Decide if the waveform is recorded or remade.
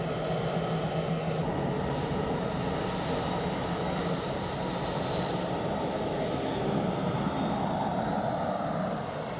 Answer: recorded